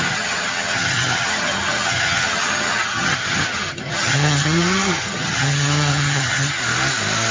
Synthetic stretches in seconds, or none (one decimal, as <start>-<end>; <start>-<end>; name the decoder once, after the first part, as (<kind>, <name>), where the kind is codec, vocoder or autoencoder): 0.0-6.6 (vocoder, HiFi-GAN)